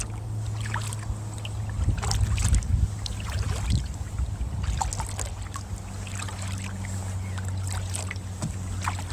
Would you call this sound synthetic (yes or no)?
no